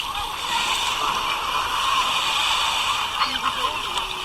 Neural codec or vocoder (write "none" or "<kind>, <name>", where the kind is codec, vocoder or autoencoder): none